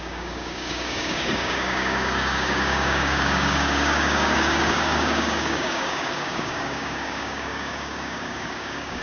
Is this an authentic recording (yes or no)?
no